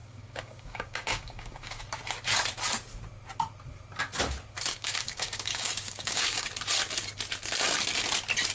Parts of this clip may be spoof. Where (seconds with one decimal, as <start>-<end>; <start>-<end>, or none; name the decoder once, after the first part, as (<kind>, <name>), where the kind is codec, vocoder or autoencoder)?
0.0-1.8 (codec, DAC); 4.7-6.5